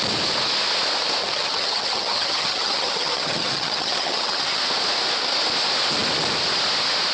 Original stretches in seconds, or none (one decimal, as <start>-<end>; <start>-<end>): 0.0-1.2; 4.6-7.1